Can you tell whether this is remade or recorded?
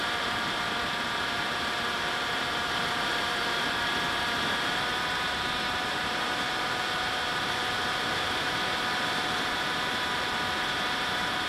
remade